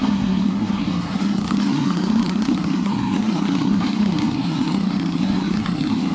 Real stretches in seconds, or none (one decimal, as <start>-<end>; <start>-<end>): none